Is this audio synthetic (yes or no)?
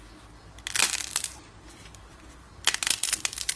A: no